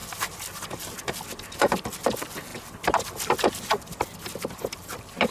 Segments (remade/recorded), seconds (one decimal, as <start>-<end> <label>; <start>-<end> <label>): 0.0-5.3 recorded